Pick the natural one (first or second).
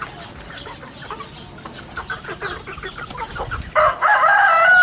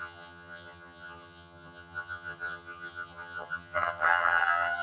first